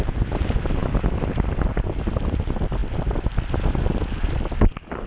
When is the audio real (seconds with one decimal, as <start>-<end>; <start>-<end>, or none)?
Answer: 0.0-5.1